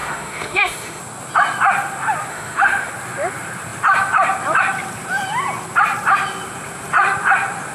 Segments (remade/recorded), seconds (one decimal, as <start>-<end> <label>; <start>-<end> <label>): 0.0-1.0 remade; 1.0-2.3 recorded; 2.3-2.9 remade; 2.9-7.7 recorded